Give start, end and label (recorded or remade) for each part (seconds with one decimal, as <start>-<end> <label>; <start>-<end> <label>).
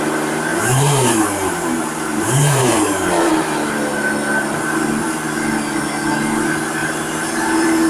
0.0-0.5 recorded; 0.5-3.3 remade; 3.3-6.8 recorded; 6.8-7.9 remade